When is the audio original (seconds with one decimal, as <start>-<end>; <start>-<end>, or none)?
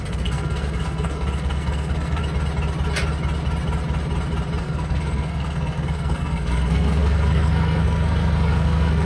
2.2-4.6